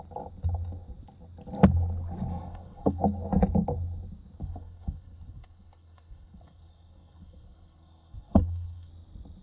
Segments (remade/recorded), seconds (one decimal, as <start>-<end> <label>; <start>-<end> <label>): 0.0-2.3 recorded; 2.3-3.0 remade; 3.0-4.4 recorded; 4.4-8.9 remade; 8.9-9.4 recorded